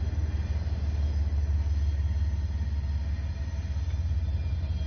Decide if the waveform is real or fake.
real